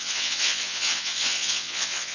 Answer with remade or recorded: remade